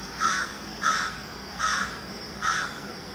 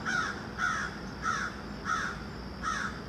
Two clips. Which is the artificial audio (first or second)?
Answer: first